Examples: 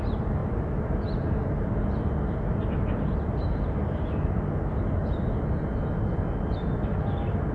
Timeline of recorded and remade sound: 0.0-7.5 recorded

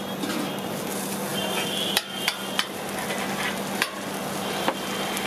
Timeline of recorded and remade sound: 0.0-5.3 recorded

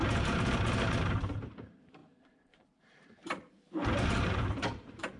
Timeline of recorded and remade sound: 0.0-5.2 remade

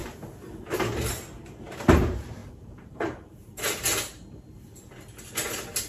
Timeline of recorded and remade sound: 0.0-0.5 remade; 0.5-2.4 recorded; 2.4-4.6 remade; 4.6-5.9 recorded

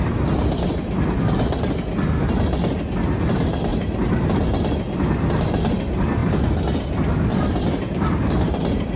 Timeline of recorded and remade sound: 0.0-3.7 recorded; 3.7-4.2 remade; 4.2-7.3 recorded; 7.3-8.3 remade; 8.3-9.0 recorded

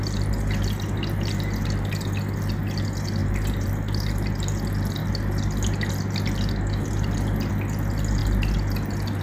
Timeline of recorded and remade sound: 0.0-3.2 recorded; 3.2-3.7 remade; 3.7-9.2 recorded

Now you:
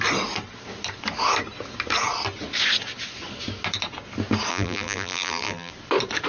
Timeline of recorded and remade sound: 0.0-4.5 recorded; 4.5-5.7 remade; 5.7-6.3 recorded

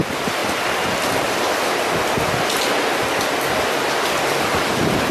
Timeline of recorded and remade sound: 0.0-5.1 recorded